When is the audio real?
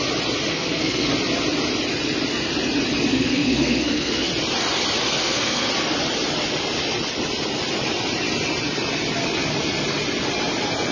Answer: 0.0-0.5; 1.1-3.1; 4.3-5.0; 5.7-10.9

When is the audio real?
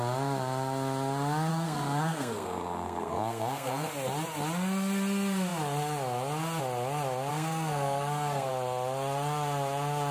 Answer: 0.0-1.5; 3.9-7.3; 8.5-10.1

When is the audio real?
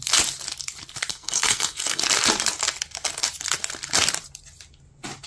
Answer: 0.0-1.1; 2.0-5.3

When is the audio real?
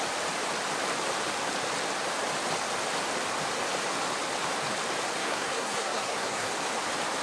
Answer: 0.0-5.2; 6.5-7.2